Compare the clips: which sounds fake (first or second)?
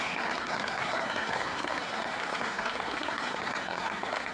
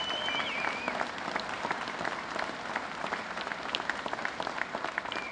first